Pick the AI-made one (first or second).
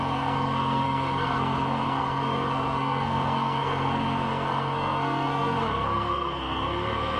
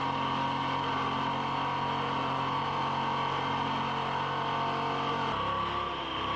first